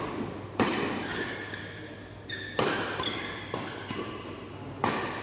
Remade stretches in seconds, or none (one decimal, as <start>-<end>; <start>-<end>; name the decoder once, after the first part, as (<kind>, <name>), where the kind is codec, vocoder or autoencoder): none